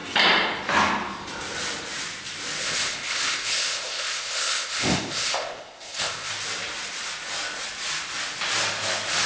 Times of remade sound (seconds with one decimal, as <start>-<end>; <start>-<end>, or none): 2.6-6.3